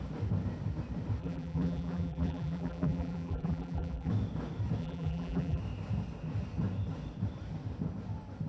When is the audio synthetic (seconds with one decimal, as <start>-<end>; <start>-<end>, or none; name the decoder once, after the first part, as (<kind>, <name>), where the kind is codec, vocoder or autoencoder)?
1.2-4.1 (vocoder, BigVGAN v2); 4.8-5.6